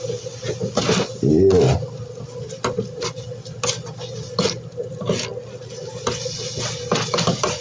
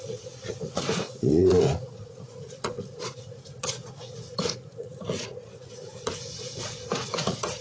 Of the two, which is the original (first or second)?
first